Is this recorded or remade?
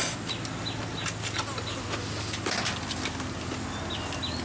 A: recorded